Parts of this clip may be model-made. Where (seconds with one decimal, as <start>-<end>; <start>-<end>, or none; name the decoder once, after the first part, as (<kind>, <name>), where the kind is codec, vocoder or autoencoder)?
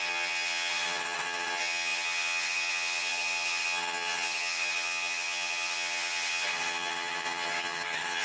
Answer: 0.0-8.2 (vocoder, HiFi-GAN)